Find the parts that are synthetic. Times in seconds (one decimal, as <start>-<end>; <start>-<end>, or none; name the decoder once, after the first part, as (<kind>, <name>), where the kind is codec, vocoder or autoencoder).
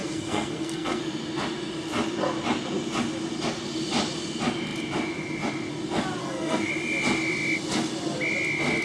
0.0-1.0 (codec, SNAC); 6.2-6.7